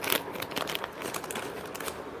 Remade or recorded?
recorded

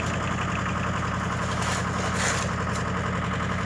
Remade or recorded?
recorded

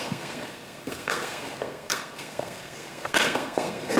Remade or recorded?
remade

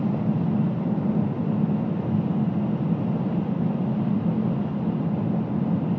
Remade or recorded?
recorded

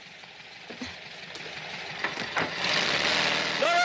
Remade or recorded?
recorded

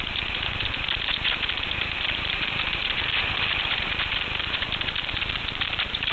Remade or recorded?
remade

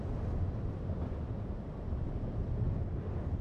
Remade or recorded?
recorded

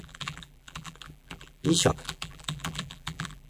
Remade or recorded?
remade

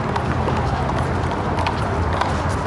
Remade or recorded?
recorded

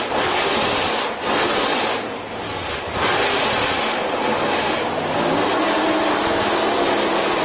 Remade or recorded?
recorded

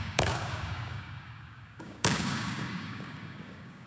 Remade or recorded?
remade